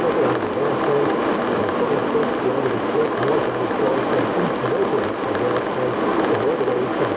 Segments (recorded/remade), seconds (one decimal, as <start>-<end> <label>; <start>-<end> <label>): 0.0-7.2 recorded